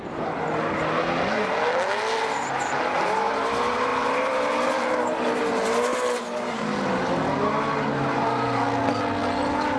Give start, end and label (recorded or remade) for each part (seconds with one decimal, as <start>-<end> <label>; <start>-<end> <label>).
0.0-9.8 recorded